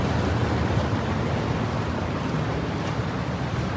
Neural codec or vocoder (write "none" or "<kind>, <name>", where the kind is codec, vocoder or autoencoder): none